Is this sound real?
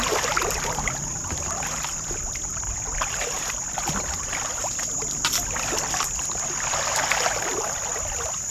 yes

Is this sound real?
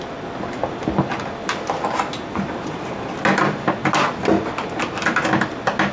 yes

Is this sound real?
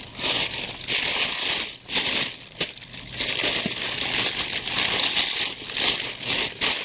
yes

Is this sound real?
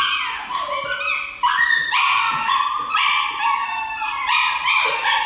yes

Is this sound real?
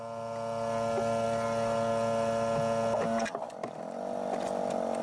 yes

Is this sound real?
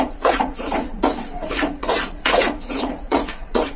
no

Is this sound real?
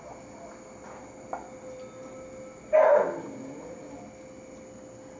yes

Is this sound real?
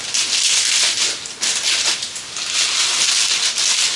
yes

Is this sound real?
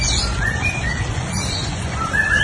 no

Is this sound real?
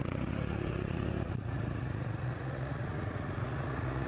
no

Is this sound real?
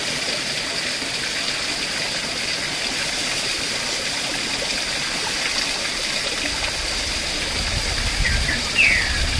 yes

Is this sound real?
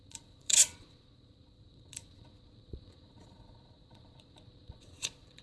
no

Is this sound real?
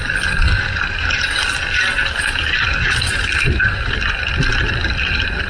yes